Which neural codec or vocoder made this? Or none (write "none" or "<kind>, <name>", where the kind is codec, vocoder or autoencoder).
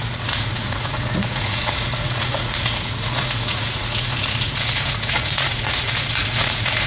vocoder, Vocos